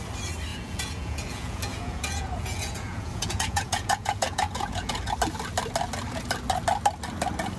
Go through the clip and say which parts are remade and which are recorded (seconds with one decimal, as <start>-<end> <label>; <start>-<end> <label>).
0.0-0.5 recorded; 0.5-5.1 remade; 5.1-7.6 recorded